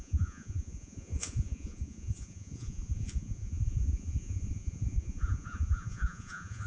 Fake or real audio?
fake